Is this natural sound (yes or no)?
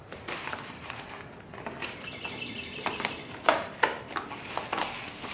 yes